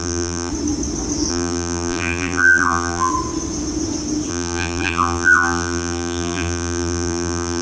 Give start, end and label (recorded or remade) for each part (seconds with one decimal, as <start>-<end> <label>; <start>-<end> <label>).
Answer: 0.0-0.5 remade; 0.5-1.3 recorded; 1.3-3.1 remade; 3.1-4.3 recorded; 4.3-7.6 remade